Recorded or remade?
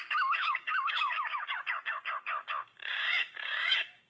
remade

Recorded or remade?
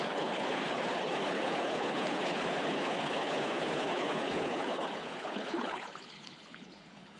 remade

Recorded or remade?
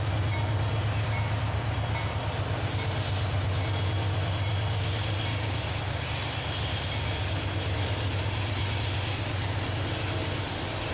recorded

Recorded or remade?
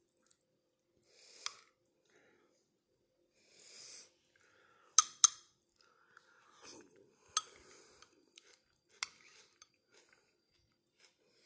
recorded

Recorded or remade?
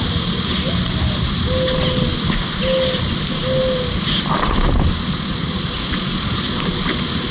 recorded